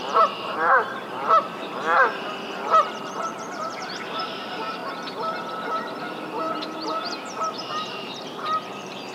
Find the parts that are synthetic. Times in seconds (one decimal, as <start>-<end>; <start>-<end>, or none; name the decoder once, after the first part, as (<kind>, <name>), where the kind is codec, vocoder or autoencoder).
0.0-1.7 (vocoder, BigVGAN v2); 3.0-4.8; 7.4-9.1